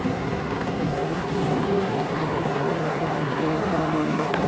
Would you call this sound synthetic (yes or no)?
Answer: yes